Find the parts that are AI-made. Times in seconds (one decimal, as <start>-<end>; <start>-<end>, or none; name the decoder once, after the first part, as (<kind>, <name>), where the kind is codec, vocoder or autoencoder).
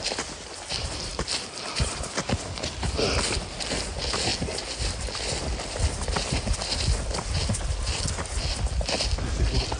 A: none